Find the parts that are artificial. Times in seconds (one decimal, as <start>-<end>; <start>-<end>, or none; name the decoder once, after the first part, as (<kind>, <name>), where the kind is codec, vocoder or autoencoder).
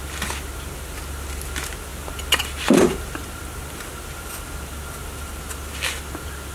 none